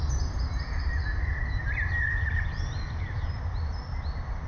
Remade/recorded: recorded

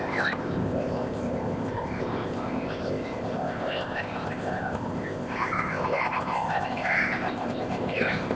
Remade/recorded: remade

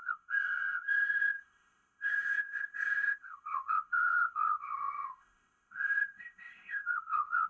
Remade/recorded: remade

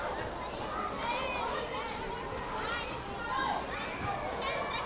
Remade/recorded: recorded